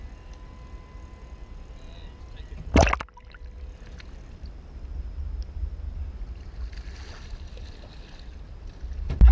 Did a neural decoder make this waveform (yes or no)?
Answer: no